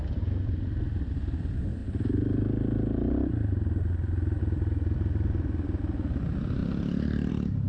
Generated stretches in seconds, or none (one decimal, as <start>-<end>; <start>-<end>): none